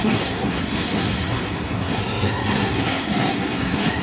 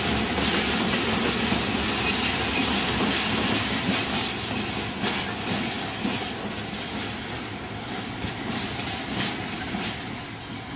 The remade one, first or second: first